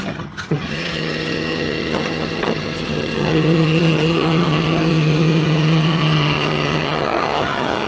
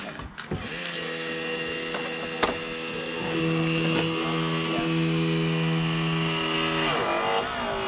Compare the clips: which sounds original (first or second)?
second